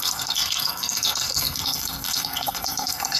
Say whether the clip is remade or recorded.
remade